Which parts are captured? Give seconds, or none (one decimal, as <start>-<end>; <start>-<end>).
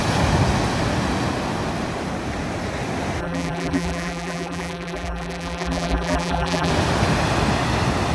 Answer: 0.0-3.2; 6.7-8.1